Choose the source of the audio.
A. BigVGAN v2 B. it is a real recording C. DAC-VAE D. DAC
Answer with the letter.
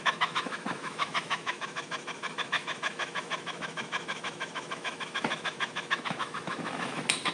C